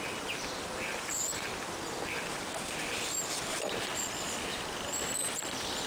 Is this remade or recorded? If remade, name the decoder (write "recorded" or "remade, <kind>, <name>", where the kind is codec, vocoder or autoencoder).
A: recorded